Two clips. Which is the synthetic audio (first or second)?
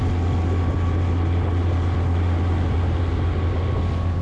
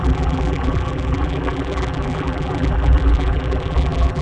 second